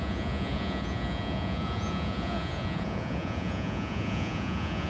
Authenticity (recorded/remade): remade